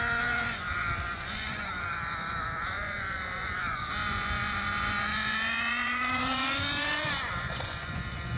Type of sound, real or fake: fake